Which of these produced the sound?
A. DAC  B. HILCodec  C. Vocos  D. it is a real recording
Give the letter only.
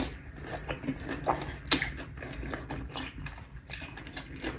D